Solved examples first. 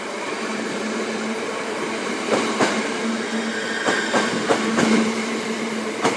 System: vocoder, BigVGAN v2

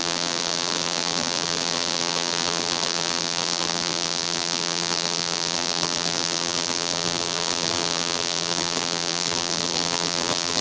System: vocoder, BigVGAN v2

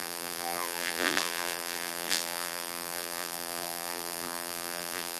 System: vocoder, BigVGAN v2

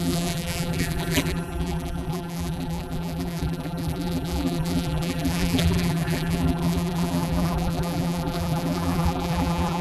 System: vocoder, BigVGAN v2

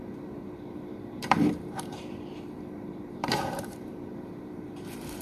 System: vocoder, BigVGAN v2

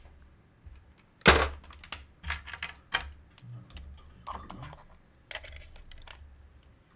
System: none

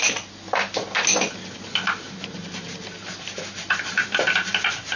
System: none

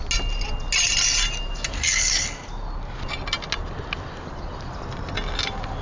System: none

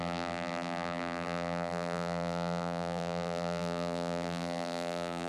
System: vocoder, BigVGAN v2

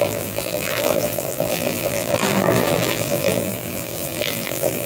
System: vocoder, BigVGAN v2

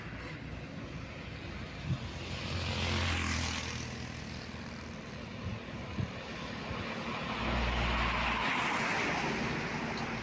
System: none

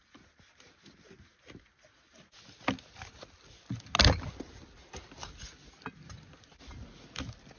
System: none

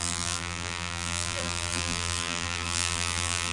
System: vocoder, BigVGAN v2